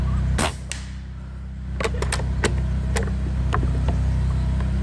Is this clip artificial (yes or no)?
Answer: no